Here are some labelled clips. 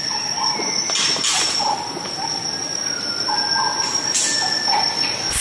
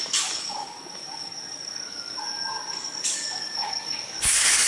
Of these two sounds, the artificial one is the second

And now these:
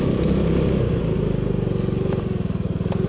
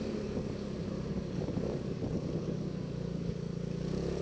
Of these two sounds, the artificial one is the second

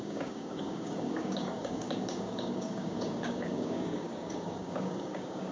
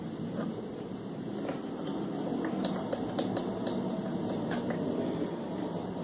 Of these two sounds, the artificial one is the first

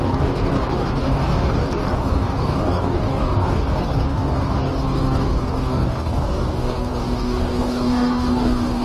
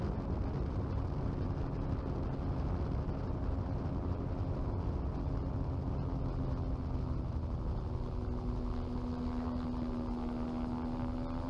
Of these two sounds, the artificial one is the first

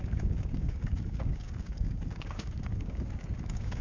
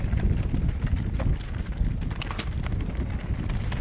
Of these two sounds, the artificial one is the first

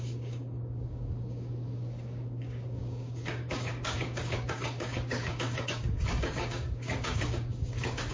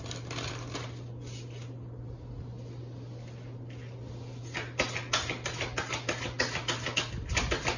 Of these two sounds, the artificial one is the first